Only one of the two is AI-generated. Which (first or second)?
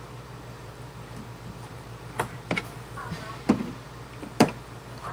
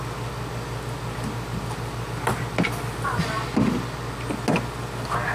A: first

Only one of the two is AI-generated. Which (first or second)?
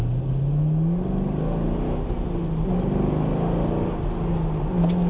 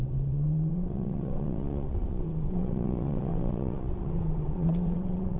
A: second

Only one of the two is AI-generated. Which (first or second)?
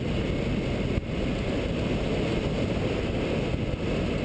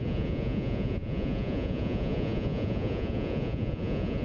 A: second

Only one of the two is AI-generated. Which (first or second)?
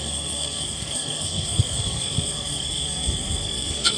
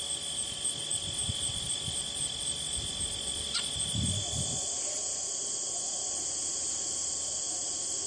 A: first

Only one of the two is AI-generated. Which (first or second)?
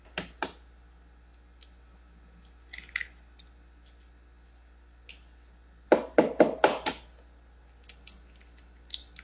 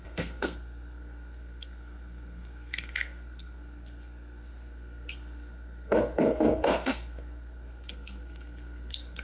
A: second